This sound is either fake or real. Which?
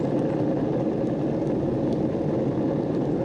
real